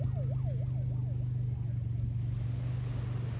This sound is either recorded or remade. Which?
recorded